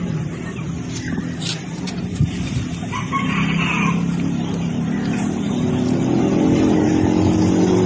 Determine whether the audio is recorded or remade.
recorded